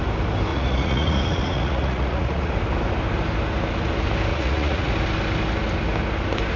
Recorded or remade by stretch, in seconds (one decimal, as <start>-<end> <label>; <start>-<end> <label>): 0.0-0.5 recorded; 0.5-2.5 remade; 2.5-4.3 recorded; 4.3-4.9 remade; 4.9-6.6 recorded